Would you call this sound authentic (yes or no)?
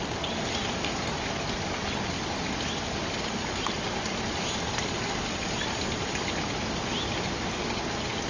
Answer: yes